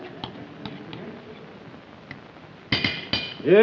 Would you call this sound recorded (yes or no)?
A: yes